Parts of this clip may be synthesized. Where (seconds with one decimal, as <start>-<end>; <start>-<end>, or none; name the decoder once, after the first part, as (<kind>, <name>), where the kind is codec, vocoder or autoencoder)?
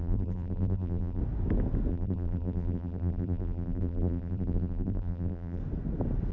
0.0-1.2 (vocoder, BigVGAN v2); 1.9-5.6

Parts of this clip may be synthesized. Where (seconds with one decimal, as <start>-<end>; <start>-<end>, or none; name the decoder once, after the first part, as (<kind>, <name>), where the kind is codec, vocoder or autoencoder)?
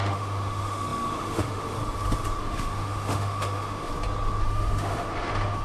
0.0-1.8 (autoencoder, DAC-VAE); 2.4-3.9; 4.4-5.6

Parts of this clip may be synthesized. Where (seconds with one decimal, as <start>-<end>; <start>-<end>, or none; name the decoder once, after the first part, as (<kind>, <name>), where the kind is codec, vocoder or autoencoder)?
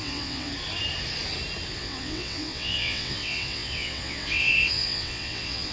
0.0-0.5 (vocoder, WaveNeXt); 1.8-5.7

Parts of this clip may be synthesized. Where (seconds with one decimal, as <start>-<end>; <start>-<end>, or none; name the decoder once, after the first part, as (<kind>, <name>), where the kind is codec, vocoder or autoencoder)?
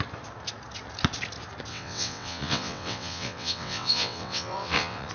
1.7-5.1 (vocoder, WaveNeXt)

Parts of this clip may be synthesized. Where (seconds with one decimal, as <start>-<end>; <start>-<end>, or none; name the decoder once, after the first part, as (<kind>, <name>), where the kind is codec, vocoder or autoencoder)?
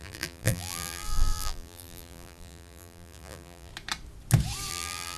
0.0-3.7 (vocoder, BigVGAN v2); 4.7-5.2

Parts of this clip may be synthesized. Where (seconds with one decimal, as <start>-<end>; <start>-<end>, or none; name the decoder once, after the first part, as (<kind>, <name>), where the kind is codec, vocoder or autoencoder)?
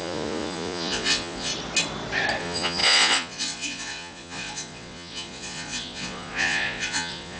0.0-1.5 (vocoder, Vocos); 2.4-7.4